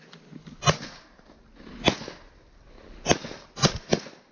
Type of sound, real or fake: real